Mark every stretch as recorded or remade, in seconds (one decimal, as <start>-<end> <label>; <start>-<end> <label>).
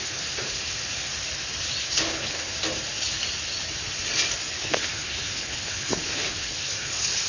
0.0-1.1 remade; 1.1-1.8 recorded; 1.8-2.5 remade; 2.5-4.5 recorded; 4.5-7.3 remade